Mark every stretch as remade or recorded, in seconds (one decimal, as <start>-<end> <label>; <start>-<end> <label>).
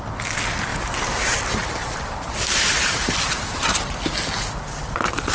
0.0-0.7 recorded; 0.7-1.4 remade; 1.4-1.8 recorded; 1.8-3.8 remade; 3.8-5.3 recorded